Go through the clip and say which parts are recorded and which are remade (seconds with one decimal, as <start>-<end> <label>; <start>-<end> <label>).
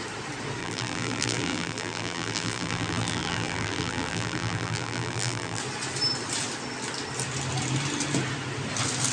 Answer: 0.0-0.6 recorded; 0.6-5.6 remade; 5.6-9.1 recorded